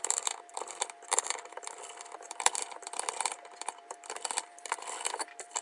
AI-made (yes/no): yes